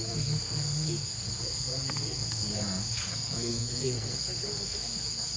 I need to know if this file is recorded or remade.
remade